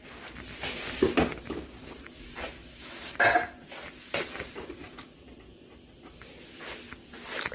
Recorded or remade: recorded